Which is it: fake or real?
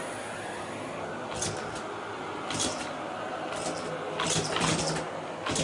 real